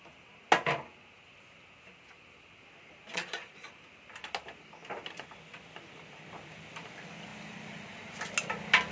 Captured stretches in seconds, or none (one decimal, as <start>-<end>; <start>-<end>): 0.0-3.1; 3.7-8.9